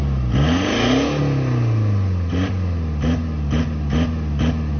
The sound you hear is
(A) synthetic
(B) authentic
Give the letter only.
B